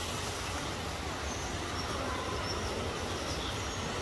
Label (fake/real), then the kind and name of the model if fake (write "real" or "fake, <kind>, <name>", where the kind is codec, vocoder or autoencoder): real